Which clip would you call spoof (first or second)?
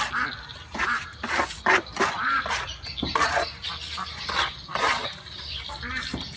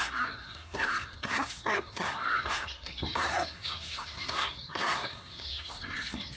second